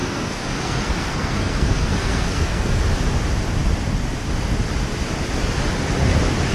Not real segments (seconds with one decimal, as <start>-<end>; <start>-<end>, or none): 0.0-2.8